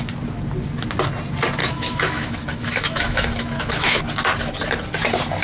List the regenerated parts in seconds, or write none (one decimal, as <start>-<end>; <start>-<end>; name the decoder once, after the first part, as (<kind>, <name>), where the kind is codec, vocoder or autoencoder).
1.6-4.0 (autoencoder, DAC-VAE)